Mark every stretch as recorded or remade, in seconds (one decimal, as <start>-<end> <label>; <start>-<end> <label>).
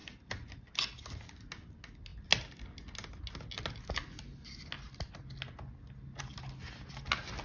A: 0.0-7.4 recorded